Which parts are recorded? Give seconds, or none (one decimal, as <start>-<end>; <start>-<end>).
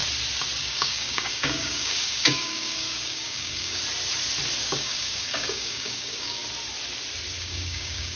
0.0-0.6; 3.8-4.6; 6.4-7.4